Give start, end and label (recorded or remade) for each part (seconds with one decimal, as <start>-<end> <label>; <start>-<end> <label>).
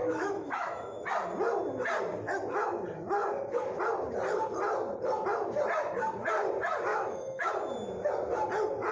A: 0.0-1.0 remade; 1.0-6.9 recorded; 6.9-7.5 remade; 7.5-8.9 recorded